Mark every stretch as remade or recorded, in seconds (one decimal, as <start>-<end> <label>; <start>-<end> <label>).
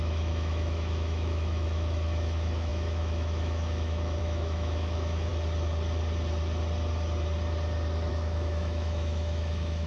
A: 0.0-5.3 remade; 5.3-8.1 recorded; 8.1-9.9 remade